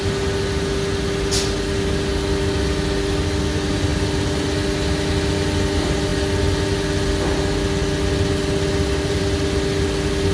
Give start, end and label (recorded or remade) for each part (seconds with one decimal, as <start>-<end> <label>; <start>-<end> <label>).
0.0-10.3 recorded